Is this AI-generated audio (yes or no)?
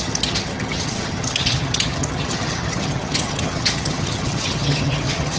yes